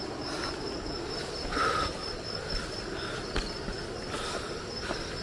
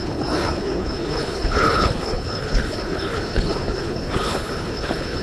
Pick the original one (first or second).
first